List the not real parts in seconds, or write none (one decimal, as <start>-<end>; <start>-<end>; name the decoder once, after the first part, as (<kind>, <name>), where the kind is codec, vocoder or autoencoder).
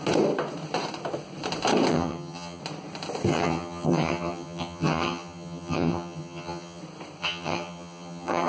1.9-2.6 (vocoder, HiFi-GAN); 3.3-6.8; 7.2-8.5